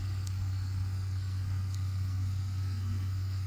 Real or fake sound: fake